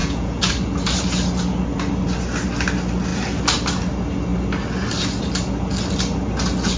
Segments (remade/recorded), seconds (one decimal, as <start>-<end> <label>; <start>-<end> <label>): 0.0-0.5 remade; 0.5-6.8 recorded